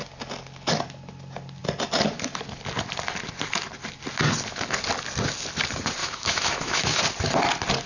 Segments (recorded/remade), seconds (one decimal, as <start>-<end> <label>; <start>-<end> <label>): 0.0-6.0 recorded; 6.0-7.0 remade; 7.0-7.9 recorded